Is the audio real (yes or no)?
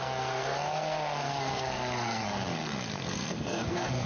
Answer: no